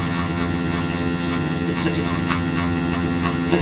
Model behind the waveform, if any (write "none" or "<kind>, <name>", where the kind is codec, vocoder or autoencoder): vocoder, HiFi-GAN